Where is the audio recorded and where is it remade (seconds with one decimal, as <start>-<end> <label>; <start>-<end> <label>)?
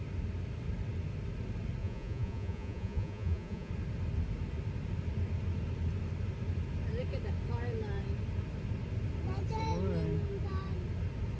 0.0-1.8 recorded; 1.8-3.7 remade; 3.7-11.4 recorded